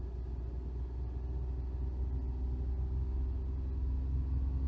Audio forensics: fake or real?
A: real